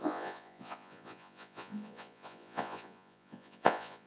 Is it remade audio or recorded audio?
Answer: remade